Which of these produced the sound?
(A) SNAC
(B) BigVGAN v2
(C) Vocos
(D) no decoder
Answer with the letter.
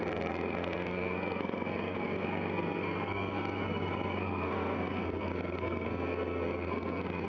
A